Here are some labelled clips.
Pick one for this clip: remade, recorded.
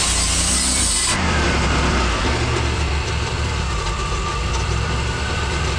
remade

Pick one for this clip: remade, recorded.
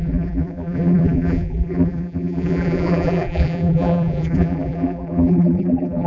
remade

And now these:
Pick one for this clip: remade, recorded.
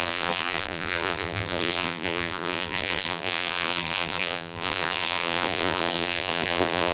remade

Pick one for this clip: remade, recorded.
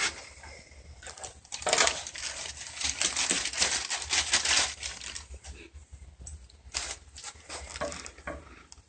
recorded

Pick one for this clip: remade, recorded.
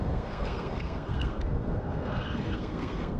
remade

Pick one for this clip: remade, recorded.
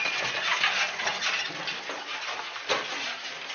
recorded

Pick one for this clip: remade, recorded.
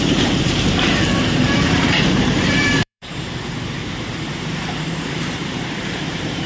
remade